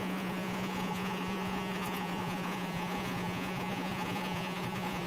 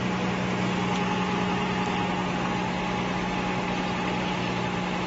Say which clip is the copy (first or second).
first